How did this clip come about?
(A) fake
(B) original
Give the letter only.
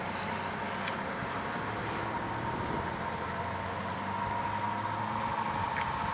B